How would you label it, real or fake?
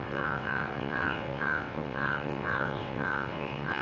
fake